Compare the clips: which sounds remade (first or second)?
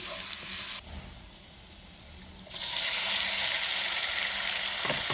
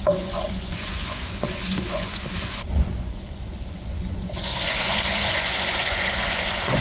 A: second